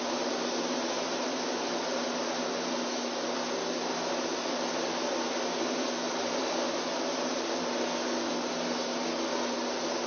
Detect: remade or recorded recorded